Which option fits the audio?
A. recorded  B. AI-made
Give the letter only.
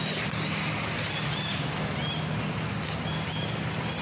A